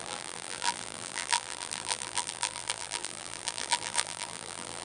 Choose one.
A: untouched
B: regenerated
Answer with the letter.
B